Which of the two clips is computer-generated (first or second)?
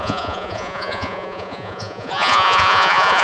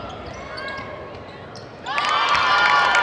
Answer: first